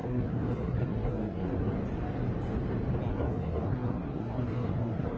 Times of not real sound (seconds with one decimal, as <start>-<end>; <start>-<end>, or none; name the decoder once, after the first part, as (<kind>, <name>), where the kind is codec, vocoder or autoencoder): 0.0-1.7 (codec, SNAC); 3.1-5.2